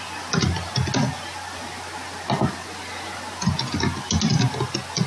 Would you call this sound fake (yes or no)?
no